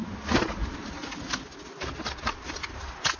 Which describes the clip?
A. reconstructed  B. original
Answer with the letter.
B